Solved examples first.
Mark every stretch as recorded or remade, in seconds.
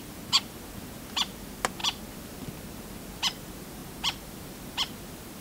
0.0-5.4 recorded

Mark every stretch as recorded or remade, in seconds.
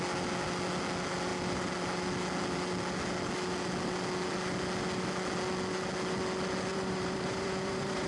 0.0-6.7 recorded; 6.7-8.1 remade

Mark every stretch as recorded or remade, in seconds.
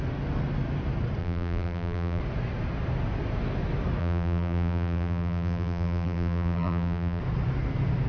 0.0-1.2 recorded; 1.2-2.2 remade; 2.2-4.0 recorded; 4.0-7.2 remade; 7.2-8.1 recorded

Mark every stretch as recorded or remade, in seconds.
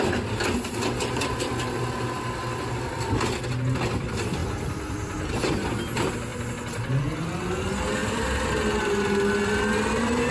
0.0-8.0 recorded; 8.0-8.5 remade; 8.5-10.3 recorded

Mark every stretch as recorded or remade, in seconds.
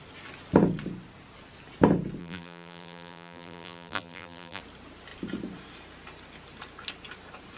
0.0-2.2 recorded; 2.2-4.6 remade; 4.6-7.6 recorded